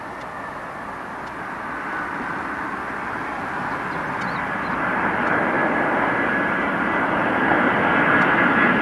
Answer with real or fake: real